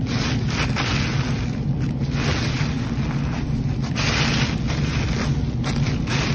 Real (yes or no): yes